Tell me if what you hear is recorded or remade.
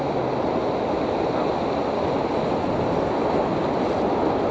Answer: recorded